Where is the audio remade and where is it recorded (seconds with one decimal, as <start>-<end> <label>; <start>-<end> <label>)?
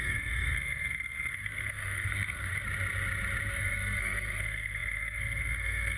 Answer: 0.0-2.5 remade; 2.5-3.5 recorded; 3.5-6.0 remade